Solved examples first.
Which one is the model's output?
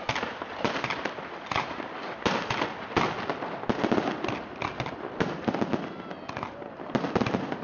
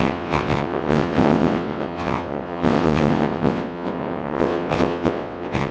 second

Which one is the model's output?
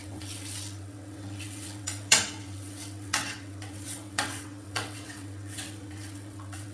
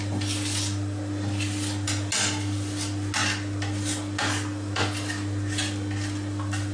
first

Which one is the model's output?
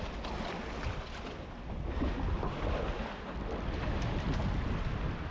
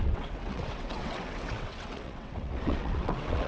second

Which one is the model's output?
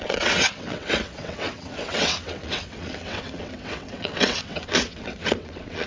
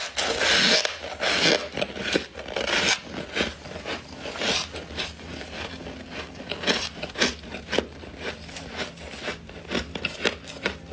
first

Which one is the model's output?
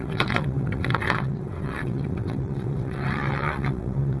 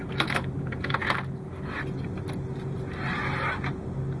first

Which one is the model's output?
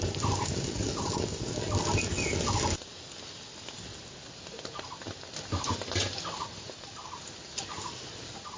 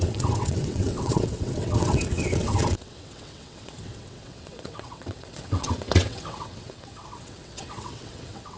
second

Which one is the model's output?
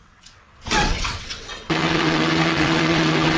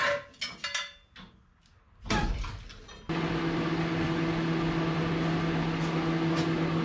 first